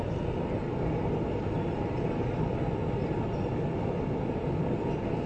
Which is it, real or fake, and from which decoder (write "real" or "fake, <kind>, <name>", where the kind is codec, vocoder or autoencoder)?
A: real